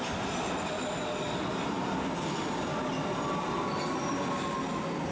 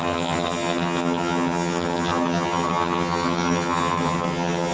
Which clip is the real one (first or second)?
first